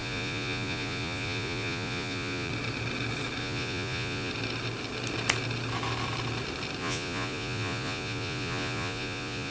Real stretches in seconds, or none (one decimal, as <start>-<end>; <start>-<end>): 2.5-3.4; 4.3-6.8